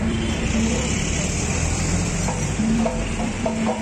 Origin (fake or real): fake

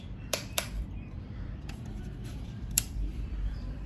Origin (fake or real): fake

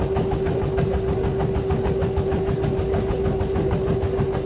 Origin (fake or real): real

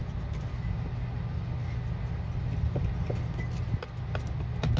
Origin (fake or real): real